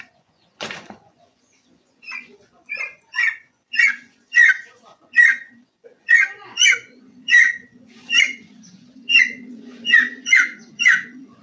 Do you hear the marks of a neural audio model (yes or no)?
yes